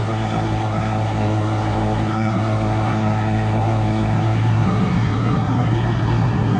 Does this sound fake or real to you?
fake